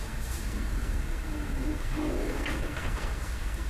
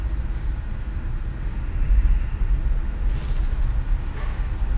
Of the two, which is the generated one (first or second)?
first